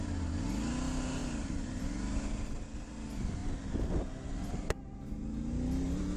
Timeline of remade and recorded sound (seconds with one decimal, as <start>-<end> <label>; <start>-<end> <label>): 0.0-1.2 recorded; 1.2-1.7 remade; 1.7-6.2 recorded

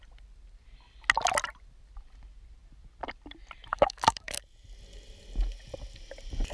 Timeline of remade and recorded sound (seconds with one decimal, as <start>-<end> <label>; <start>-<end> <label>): 0.0-3.7 recorded; 3.7-4.4 remade; 4.4-6.5 recorded

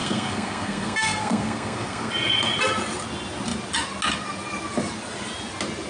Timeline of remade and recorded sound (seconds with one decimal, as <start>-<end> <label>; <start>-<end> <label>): 0.0-2.1 remade; 2.1-5.9 recorded

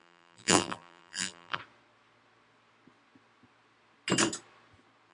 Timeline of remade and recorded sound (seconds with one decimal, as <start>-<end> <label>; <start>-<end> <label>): 0.0-1.6 remade; 1.6-5.1 recorded

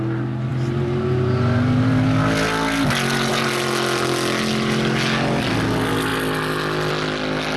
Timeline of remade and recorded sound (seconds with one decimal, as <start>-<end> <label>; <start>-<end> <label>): 0.0-7.6 recorded